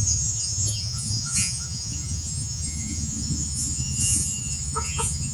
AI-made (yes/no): yes